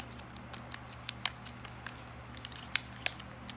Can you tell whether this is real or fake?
real